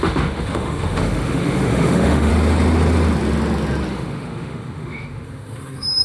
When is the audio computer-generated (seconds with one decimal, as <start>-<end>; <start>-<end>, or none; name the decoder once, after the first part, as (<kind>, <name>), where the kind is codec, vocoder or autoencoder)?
0.0-2.3 (autoencoder, DAC-VAE); 3.9-6.0